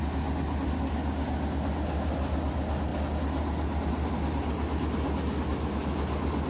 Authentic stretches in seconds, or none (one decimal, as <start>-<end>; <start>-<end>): 0.0-6.5